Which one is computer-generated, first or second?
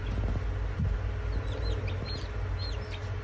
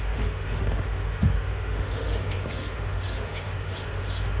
second